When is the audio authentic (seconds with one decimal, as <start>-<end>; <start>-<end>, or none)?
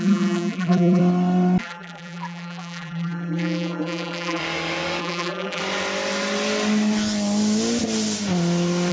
1.0-1.6; 4.4-5.0; 5.6-8.9